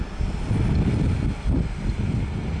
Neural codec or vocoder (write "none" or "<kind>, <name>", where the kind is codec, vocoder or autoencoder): none